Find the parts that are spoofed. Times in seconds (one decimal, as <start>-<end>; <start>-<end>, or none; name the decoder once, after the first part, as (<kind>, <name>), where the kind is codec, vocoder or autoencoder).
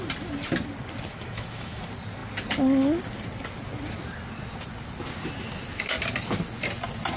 1.1-1.8 (autoencoder, DAC-VAE)